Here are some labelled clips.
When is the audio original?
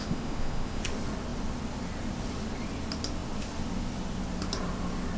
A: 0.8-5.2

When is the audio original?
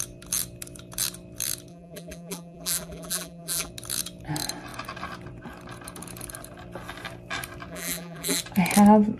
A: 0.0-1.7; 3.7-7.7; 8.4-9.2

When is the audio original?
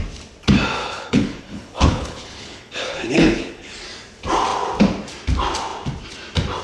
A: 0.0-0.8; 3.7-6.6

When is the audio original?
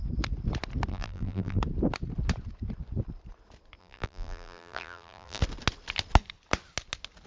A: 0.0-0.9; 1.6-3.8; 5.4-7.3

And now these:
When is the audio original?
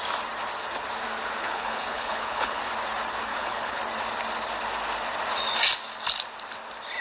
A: 0.0-1.4; 2.6-3.3; 3.8-7.0